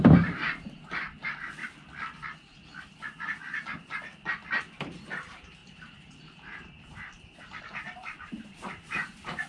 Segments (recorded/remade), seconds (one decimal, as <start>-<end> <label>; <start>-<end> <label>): 0.0-1.6 remade; 1.6-4.6 recorded; 4.6-9.5 remade